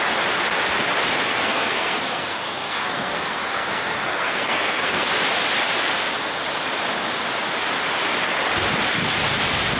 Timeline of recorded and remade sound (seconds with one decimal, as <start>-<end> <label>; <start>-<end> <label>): 0.0-1.3 recorded; 1.3-5.1 remade; 5.1-9.8 recorded